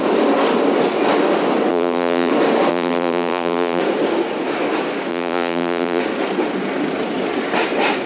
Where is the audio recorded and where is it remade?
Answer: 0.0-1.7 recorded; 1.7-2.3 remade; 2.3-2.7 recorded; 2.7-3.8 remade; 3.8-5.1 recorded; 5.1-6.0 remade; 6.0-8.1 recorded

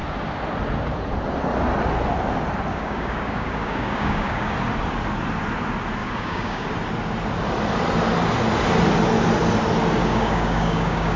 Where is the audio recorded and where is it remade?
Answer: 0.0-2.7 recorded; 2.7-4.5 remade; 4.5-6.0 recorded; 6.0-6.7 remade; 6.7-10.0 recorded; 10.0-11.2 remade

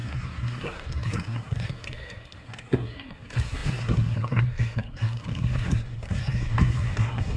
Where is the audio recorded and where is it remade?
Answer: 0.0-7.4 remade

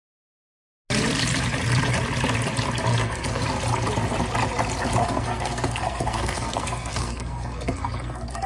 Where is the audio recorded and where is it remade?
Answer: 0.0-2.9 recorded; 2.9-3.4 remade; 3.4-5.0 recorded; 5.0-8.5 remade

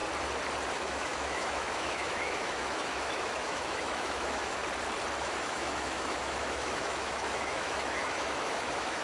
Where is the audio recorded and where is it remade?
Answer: 0.0-0.7 recorded; 0.7-4.6 remade; 4.6-5.2 recorded; 5.2-9.0 remade

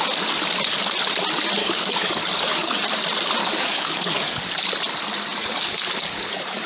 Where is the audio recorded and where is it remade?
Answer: 0.0-1.6 recorded; 1.6-2.8 remade; 2.8-3.4 recorded; 3.4-4.5 remade; 4.5-5.4 recorded; 5.4-6.7 remade